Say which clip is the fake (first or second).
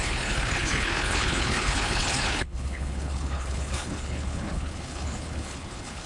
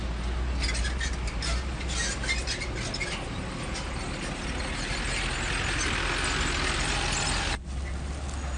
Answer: first